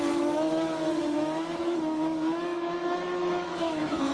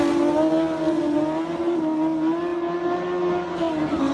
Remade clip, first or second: first